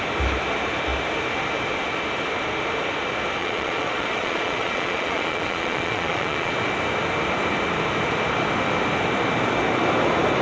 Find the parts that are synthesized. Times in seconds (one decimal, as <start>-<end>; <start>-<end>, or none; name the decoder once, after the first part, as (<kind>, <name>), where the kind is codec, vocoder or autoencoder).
3.4-6.5 (vocoder, Vocos)